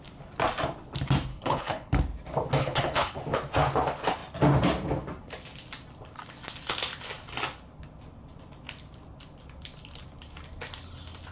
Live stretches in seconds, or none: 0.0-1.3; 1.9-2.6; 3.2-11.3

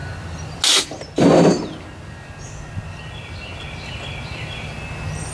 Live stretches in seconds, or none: 0.0-5.3